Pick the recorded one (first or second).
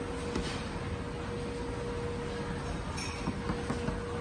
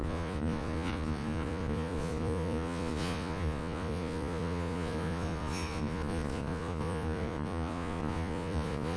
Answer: first